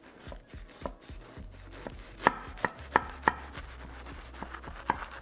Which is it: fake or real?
real